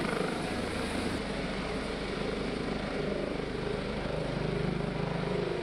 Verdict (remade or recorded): remade